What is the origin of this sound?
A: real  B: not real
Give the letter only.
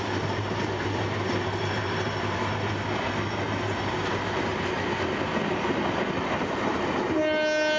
A